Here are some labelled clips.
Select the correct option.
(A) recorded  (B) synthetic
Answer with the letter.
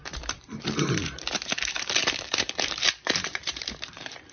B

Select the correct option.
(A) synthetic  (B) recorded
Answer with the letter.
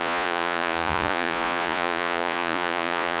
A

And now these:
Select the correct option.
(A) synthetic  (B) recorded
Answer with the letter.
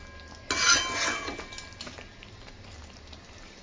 B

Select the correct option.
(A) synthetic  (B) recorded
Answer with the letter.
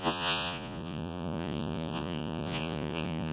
A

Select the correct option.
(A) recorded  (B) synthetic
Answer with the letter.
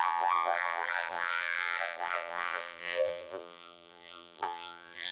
B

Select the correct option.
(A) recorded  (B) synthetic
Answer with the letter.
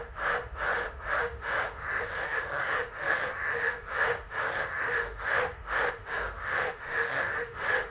B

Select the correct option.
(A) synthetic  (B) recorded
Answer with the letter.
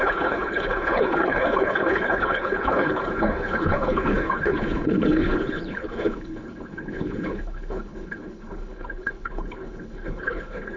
A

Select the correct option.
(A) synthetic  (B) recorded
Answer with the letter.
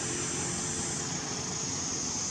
B